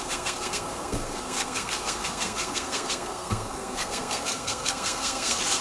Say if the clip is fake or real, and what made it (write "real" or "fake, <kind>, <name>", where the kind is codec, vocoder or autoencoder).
fake, codec, SNAC